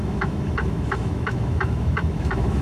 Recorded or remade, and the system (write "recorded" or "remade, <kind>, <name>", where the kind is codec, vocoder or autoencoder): remade, autoencoder, DAC-VAE